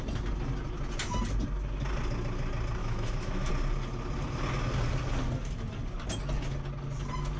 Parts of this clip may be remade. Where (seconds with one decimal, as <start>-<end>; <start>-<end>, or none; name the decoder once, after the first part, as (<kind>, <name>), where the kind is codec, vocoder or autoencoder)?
2.8-3.5 (autoencoder, DAC-VAE)